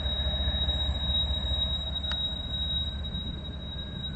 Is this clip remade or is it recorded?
recorded